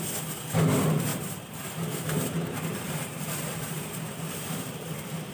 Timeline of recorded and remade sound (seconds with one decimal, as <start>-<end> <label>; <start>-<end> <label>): 0.0-1.1 recorded; 1.1-4.3 remade; 4.3-5.3 recorded